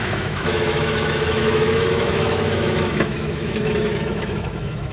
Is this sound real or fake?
fake